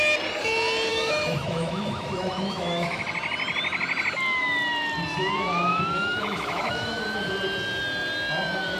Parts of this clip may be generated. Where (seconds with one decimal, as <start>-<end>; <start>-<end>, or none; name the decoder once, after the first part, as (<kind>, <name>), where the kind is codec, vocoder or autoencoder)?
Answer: 0.9-3.0 (autoencoder, DAC-VAE); 5.7-7.0